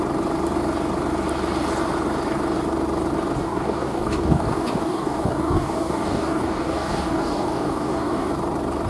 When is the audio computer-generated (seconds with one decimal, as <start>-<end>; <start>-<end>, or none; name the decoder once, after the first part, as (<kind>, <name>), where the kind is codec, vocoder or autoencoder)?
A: 3.4-8.3 (codec, DAC)